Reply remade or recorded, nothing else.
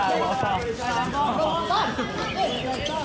recorded